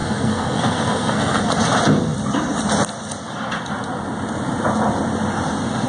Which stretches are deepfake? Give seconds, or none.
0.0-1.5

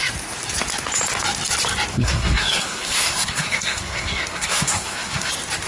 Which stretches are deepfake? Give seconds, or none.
1.9-5.3

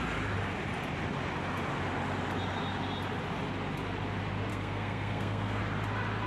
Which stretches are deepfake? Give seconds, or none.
4.5-5.6

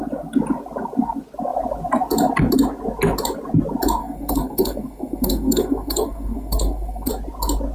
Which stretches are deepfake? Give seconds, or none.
4.0-7.1